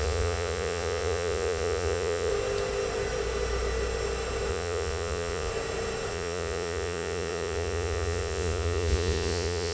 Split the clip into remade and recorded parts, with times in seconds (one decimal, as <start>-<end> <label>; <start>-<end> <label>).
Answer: 0.0-2.3 remade; 2.3-4.5 recorded; 4.5-5.5 remade; 5.5-6.1 recorded; 6.1-9.7 remade